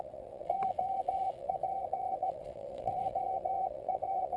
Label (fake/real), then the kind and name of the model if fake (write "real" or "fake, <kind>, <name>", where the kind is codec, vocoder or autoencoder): fake, vocoder, WaveNeXt